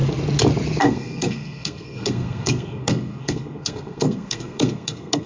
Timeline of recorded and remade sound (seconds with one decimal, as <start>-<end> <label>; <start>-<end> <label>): 0.0-0.8 recorded; 0.8-5.3 remade